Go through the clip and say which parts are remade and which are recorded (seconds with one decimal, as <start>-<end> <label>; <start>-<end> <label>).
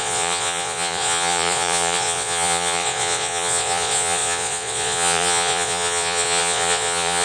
0.0-7.2 remade